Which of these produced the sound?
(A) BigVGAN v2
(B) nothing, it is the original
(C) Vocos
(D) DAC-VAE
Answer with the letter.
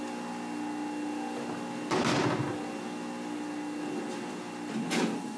B